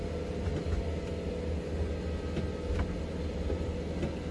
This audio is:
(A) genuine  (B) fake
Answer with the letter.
A